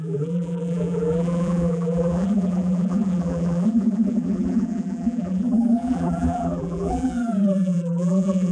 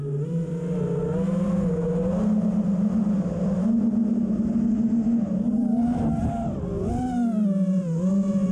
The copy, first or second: first